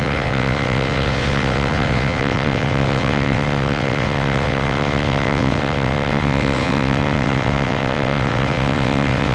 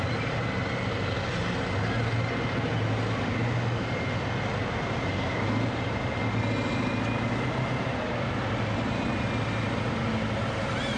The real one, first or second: second